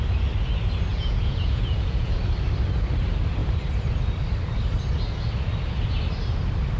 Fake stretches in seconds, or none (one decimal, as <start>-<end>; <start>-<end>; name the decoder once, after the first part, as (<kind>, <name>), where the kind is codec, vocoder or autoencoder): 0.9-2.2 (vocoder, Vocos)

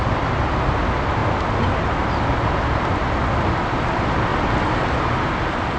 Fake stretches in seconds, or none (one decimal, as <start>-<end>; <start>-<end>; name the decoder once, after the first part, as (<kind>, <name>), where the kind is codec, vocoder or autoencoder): none

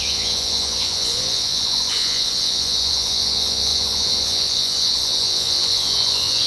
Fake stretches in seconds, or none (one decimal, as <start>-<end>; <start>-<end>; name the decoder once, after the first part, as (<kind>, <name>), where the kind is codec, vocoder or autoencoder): 0.0-6.5 (vocoder, Vocos)

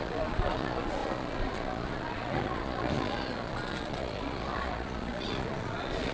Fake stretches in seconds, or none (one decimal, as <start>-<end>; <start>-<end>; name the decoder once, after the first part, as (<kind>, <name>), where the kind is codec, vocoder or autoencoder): 0.0-6.1 (vocoder, Vocos)

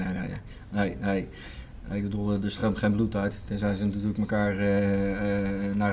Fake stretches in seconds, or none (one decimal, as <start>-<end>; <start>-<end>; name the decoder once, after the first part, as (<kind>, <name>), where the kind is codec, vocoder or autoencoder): none

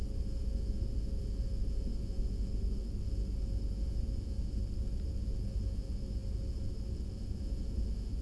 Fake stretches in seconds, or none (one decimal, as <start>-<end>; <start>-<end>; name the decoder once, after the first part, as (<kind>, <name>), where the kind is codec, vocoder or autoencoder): none